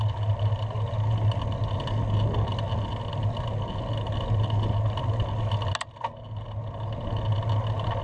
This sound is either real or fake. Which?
real